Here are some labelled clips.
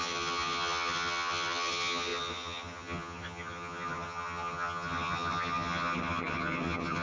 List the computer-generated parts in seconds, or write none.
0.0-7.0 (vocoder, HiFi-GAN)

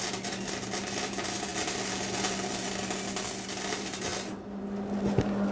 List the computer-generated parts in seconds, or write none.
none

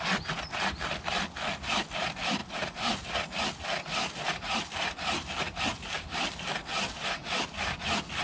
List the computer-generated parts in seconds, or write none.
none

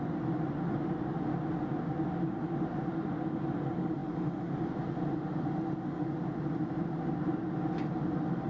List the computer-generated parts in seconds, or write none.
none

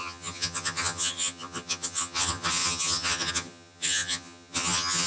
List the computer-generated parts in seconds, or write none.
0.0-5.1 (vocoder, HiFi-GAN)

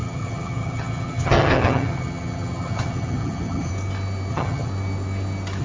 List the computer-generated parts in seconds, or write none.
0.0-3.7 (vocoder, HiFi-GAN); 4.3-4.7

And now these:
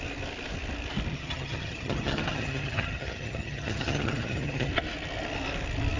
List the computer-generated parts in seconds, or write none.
1.1-4.7 (vocoder, HiFi-GAN)

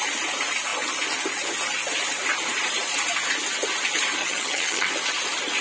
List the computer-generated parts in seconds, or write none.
4.2-4.9 (vocoder, HiFi-GAN)